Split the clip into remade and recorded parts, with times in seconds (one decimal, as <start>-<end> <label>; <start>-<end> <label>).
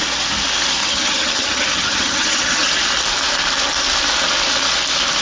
0.0-0.8 recorded; 0.8-2.7 remade; 2.7-5.2 recorded